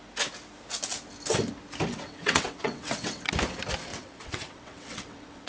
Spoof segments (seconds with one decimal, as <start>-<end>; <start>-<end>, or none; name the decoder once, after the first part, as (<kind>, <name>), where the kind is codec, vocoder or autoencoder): 1.9-3.3 (vocoder, WaveNeXt); 3.9-5.5